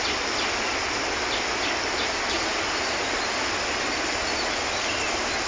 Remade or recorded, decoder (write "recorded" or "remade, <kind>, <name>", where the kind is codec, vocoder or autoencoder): recorded